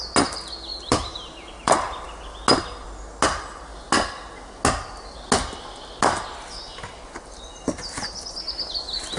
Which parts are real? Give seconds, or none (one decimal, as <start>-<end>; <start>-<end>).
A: 0.0-0.7; 2.4-9.2